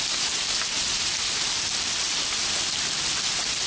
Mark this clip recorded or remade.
recorded